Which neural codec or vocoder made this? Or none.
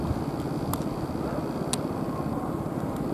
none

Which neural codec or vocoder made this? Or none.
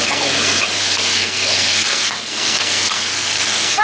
codec, SNAC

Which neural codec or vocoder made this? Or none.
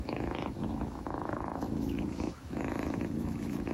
autoencoder, DAC-VAE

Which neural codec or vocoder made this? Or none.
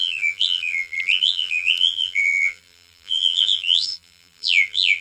vocoder, BigVGAN v2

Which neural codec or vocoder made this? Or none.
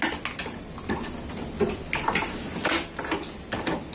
none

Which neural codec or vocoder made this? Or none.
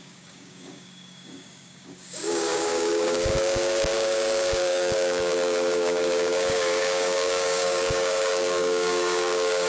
codec, DAC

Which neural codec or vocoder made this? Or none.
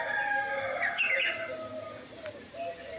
none